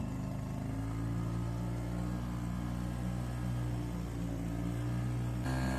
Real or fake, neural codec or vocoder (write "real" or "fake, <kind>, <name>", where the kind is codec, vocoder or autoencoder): real